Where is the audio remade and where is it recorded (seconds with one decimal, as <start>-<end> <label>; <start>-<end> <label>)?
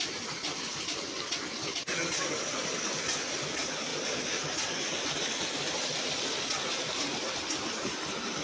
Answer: 0.0-3.9 recorded; 3.9-6.4 remade; 6.4-8.4 recorded